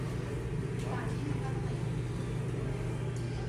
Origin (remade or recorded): recorded